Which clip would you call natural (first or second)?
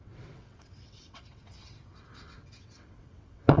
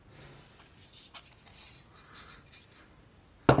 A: second